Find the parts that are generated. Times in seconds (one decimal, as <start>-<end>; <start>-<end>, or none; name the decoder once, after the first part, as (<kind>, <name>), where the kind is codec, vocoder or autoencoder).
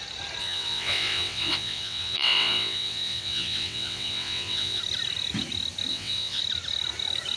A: 0.4-4.8 (vocoder, WaveNeXt); 5.9-6.4